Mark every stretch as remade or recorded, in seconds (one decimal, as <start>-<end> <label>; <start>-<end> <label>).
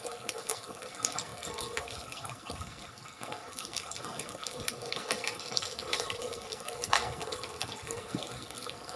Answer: 0.0-9.0 remade